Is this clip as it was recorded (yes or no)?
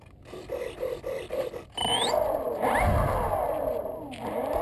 yes